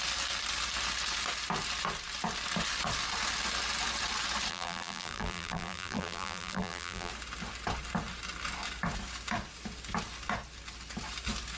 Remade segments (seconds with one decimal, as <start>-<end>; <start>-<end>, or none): 4.5-7.1